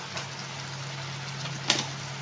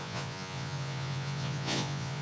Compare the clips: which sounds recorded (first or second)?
first